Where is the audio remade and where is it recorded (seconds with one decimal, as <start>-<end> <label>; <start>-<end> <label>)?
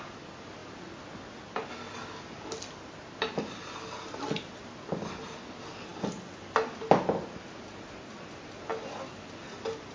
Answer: 0.0-9.9 recorded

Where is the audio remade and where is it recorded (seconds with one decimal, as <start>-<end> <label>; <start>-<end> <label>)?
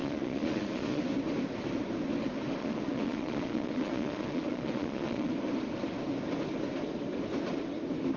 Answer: 0.0-1.0 remade; 1.0-2.6 recorded; 2.6-5.3 remade; 5.3-8.2 recorded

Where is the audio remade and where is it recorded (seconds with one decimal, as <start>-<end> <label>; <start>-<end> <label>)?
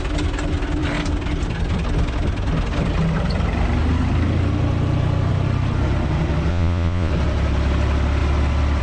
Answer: 0.0-6.5 recorded; 6.5-7.1 remade; 7.1-8.8 recorded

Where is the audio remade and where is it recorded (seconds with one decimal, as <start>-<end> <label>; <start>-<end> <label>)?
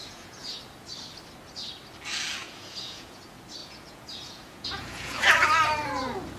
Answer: 0.0-0.6 remade; 0.6-2.4 recorded; 2.4-3.2 remade; 3.2-3.6 recorded; 3.6-5.2 remade; 5.2-6.4 recorded